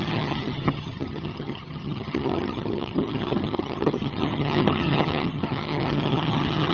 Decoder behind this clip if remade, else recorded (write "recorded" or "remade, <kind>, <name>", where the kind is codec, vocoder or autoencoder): remade, vocoder, HiFi-GAN